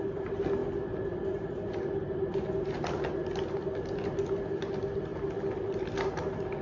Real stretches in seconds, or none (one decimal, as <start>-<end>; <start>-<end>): 0.0-6.6